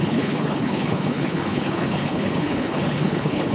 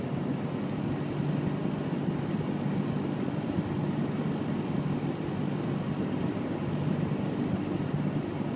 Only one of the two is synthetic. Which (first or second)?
first